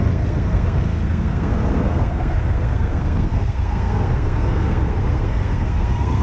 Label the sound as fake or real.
fake